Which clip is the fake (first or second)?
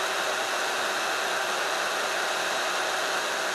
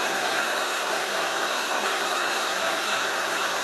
second